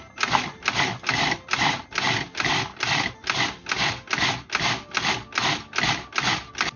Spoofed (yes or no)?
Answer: no